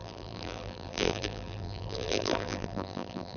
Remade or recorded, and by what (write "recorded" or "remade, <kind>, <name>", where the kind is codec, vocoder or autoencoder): remade, vocoder, BigVGAN v2